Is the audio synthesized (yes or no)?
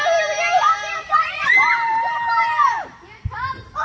yes